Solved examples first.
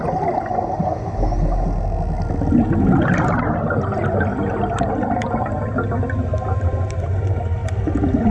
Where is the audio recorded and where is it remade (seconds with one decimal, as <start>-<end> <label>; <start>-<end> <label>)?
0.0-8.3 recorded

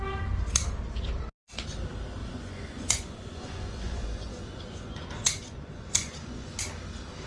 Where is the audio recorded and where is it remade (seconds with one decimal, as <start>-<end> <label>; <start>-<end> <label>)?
0.0-2.2 recorded; 2.2-6.6 remade; 6.6-7.3 recorded

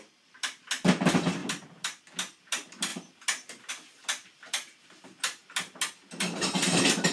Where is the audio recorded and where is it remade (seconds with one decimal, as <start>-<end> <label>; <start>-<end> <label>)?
0.0-7.1 recorded

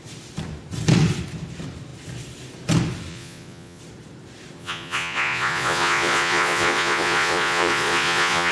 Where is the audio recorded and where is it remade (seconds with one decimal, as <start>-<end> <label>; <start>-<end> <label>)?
0.0-3.1 recorded; 3.1-3.8 remade; 3.8-4.6 recorded; 4.6-8.5 remade

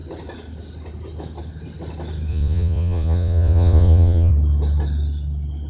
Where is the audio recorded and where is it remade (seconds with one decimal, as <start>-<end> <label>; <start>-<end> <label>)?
0.0-2.3 recorded; 2.3-4.3 remade; 4.3-5.7 recorded

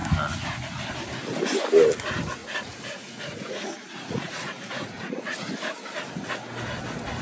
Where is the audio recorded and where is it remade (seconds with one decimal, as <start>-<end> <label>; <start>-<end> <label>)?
0.0-2.4 recorded; 2.4-5.3 remade; 5.3-7.2 recorded